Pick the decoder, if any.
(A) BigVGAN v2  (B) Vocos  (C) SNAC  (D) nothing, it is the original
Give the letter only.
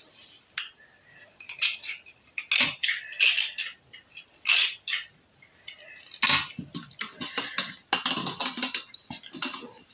D